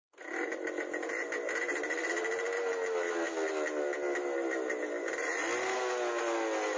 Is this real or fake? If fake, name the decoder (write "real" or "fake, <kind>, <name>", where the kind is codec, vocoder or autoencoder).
real